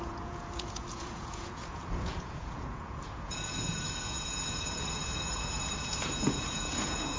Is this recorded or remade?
remade